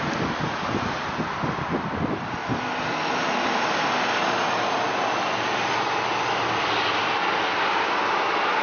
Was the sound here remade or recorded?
recorded